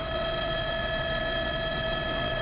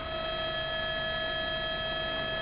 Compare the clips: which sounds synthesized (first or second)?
first